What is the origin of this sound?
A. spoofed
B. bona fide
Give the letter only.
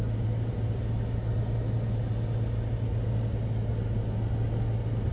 B